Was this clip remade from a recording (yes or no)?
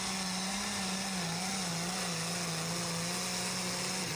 no